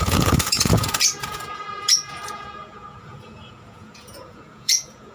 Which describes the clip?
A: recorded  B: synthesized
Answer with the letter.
B